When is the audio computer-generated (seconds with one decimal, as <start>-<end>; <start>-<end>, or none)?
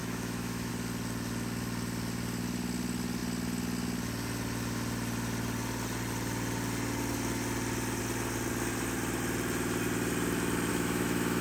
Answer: 0.0-0.7; 10.7-11.4